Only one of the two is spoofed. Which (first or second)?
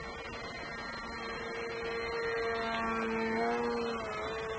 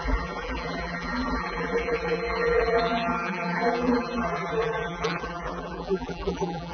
second